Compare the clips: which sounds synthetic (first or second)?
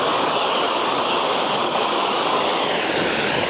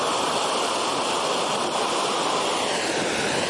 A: first